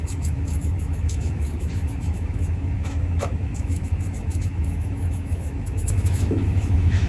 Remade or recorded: remade